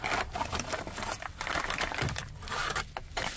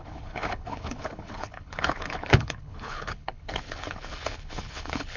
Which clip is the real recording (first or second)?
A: first